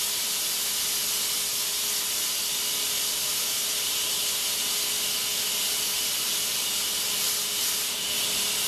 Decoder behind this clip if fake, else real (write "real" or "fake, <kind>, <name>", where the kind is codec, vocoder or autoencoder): real